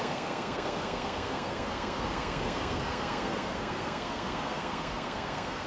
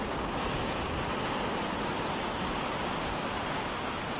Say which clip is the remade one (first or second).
first